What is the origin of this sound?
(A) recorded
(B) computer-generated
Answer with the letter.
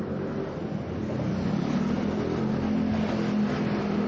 A